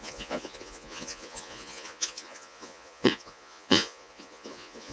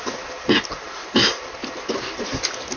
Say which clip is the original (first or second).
second